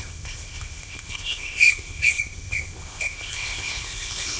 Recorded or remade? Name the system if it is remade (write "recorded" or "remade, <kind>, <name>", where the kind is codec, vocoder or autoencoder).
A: remade, codec, ZipCodec